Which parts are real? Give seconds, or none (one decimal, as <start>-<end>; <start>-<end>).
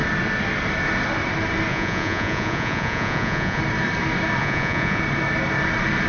0.0-1.7; 3.6-4.4; 5.0-6.1